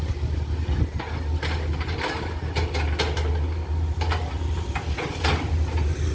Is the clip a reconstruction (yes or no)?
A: no